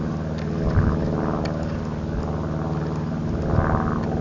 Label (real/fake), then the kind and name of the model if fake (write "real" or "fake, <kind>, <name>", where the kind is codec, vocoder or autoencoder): real